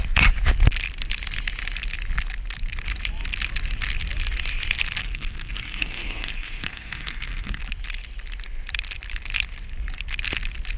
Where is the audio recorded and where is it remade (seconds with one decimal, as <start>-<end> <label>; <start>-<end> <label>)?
0.0-5.0 recorded; 5.0-7.6 remade; 7.6-10.8 recorded